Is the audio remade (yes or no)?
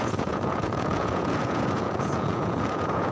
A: yes